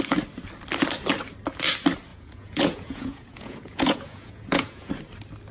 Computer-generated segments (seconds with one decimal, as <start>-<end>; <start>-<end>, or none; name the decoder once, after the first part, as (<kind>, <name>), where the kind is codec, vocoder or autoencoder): 2.1-4.9 (vocoder, Vocos)